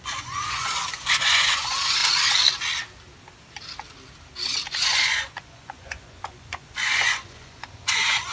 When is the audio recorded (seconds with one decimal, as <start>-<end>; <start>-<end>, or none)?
2.0-4.8